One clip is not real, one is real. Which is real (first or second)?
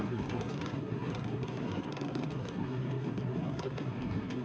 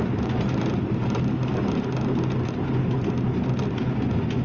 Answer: second